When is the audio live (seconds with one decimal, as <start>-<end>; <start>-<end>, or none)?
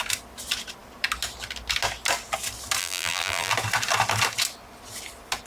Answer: 0.0-2.8; 3.5-5.5